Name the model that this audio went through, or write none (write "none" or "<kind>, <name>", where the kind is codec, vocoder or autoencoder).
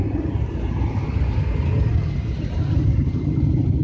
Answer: vocoder, BigVGAN v2